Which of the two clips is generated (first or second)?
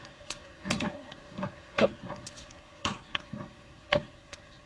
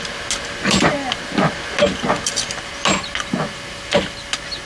first